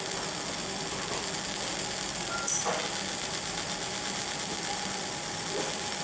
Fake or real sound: real